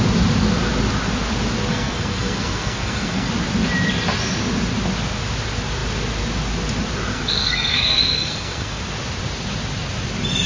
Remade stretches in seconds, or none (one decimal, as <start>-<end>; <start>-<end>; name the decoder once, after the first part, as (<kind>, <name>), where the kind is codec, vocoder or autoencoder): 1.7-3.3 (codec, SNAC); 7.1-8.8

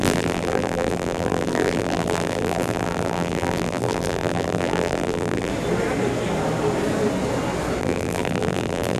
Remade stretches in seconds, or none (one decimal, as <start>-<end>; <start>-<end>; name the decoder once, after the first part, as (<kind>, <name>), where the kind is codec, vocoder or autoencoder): 0.0-5.5 (vocoder, BigVGAN v2); 7.8-9.0

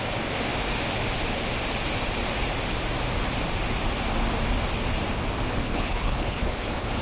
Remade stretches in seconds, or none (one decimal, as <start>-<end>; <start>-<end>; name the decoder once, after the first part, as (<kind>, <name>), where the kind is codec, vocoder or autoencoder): 5.5-7.0 (codec, HILCodec)

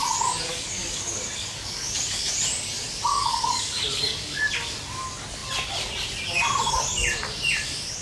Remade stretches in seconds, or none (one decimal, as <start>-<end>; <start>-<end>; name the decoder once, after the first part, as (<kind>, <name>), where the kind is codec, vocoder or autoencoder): 0.5-2.3 (codec, DAC); 3.1-4.5

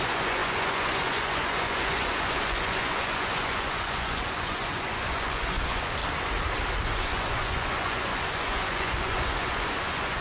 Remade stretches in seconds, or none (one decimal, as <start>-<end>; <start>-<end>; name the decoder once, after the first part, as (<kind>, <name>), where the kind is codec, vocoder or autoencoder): 0.0-6.0 (vocoder, Vocos); 6.9-10.2

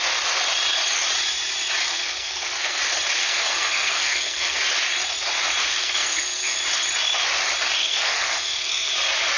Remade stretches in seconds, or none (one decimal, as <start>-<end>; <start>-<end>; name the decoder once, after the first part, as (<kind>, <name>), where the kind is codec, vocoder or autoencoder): 1.9-2.8 (codec, SNAC); 3.2-4.6; 5.8-6.6; 7.8-8.9

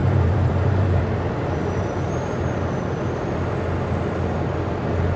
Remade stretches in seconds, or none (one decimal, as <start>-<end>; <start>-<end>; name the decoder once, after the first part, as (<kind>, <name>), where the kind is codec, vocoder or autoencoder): 0.0-1.0 (vocoder, BigVGAN v2); 1.6-2.4